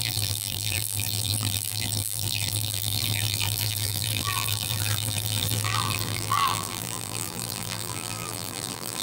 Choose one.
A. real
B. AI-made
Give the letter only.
B